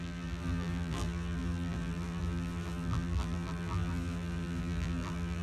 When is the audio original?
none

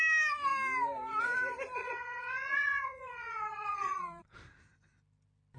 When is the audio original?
0.0-1.8; 4.2-5.6

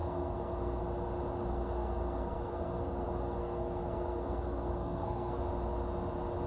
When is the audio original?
0.8-1.5; 5.4-6.5

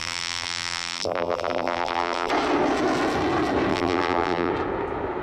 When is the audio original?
2.3-3.7; 4.5-5.2

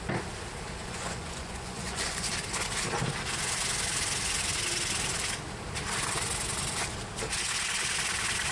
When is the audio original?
0.0-0.8; 2.3-8.5

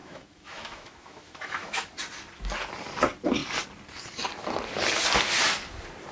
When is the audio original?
1.9-6.1

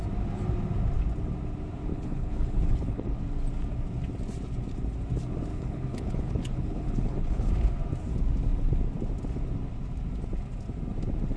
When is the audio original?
0.0-1.9; 3.2-5.5; 7.5-11.4

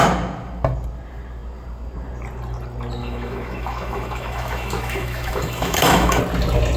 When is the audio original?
0.0-3.0; 6.2-6.8